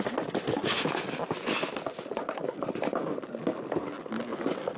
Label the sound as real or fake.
real